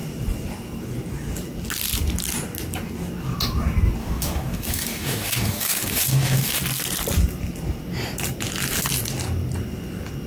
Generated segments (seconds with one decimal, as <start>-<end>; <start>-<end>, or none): 4.0-6.6